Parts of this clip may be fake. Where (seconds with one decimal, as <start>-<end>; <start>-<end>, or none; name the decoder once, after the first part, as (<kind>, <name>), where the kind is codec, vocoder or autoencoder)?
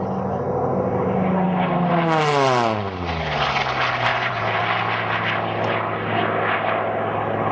4.1-4.6 (vocoder, Vocos)